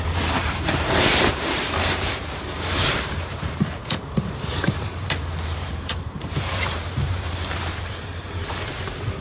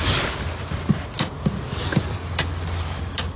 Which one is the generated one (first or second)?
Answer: first